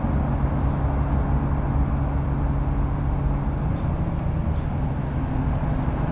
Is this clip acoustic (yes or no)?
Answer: yes